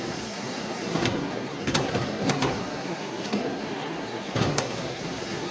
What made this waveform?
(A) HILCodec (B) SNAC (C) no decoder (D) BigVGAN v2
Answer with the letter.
B